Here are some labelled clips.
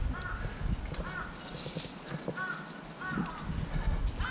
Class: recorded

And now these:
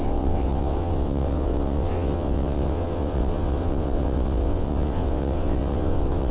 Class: remade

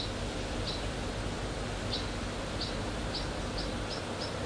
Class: recorded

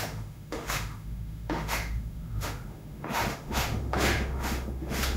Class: remade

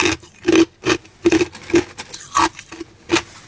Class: recorded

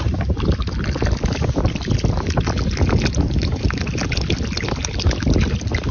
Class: recorded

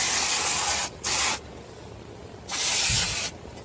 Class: recorded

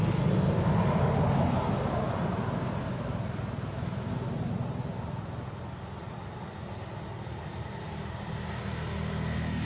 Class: recorded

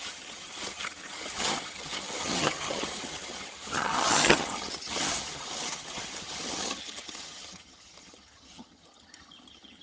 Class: remade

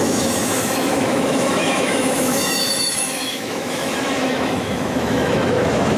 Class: remade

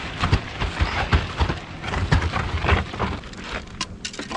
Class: remade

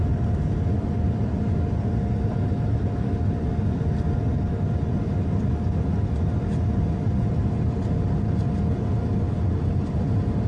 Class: recorded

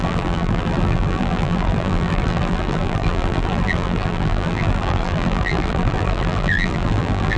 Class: remade